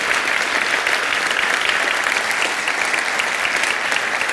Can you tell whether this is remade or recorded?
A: recorded